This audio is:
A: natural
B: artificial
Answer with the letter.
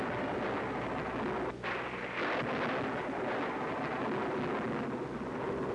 A